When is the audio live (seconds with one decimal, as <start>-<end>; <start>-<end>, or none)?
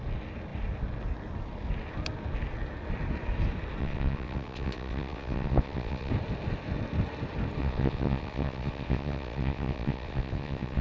0.0-3.8; 6.1-7.6